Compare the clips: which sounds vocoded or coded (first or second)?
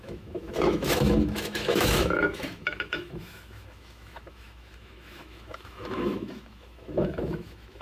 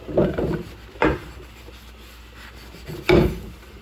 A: first